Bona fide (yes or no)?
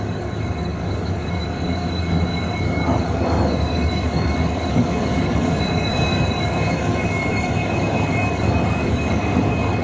no